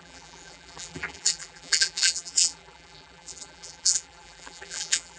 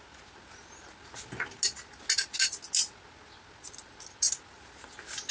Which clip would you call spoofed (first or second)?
first